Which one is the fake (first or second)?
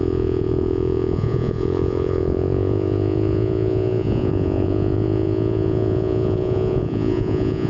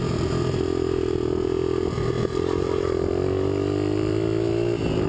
first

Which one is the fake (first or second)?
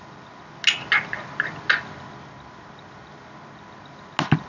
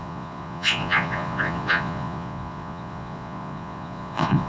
second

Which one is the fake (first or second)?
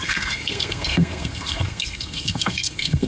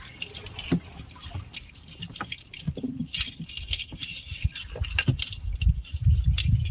first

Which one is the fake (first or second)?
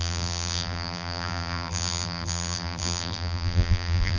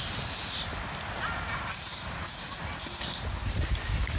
first